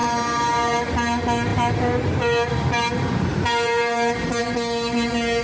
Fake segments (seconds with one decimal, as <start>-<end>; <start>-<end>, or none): 0.0-0.9; 1.5-4.4